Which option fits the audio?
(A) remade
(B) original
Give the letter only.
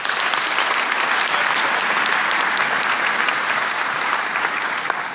B